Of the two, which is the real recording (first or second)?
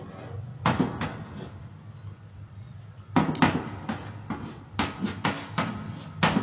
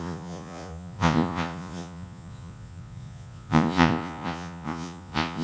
first